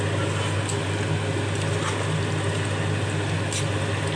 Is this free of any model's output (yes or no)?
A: yes